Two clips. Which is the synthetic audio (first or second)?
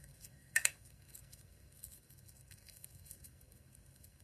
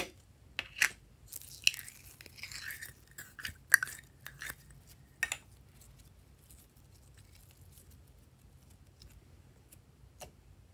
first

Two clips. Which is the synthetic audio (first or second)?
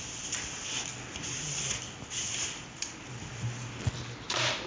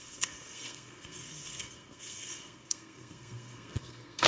second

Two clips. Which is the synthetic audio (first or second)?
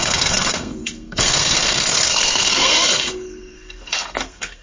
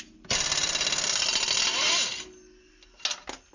first